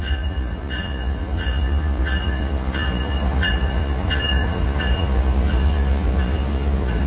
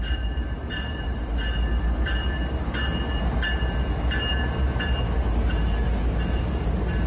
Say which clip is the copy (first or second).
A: first